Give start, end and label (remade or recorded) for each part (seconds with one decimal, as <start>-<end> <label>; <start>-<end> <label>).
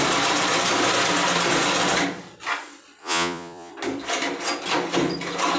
0.0-3.0 recorded; 3.0-3.7 remade; 3.7-5.6 recorded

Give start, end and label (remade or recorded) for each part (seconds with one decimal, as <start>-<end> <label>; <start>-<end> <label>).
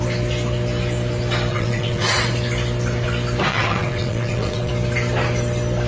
0.0-1.5 recorded; 1.5-2.3 remade; 2.3-3.5 recorded; 3.5-4.7 remade; 4.7-5.9 recorded